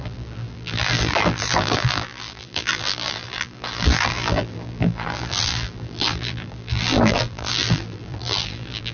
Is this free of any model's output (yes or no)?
no